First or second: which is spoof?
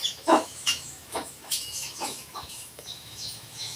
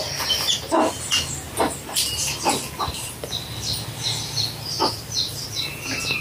first